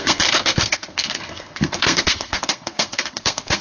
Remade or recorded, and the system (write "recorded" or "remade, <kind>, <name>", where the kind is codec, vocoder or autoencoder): remade, codec, SNAC